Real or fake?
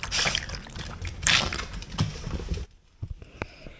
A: fake